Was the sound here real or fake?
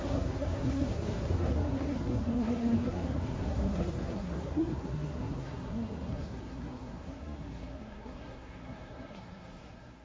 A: fake